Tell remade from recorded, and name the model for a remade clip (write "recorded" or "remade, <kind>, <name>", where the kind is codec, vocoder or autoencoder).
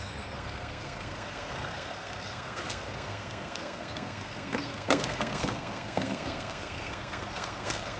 remade, codec, SNAC